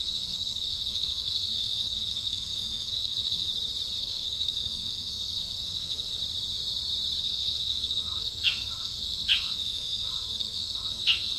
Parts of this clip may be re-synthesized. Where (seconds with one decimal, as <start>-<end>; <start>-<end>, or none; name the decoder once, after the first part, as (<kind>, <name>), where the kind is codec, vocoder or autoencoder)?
0.0-3.5 (codec, SNAC); 4.0-6.2; 7.2-11.4